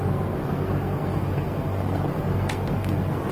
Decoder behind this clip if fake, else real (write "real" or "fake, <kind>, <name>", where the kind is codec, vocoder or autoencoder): fake, codec, SNAC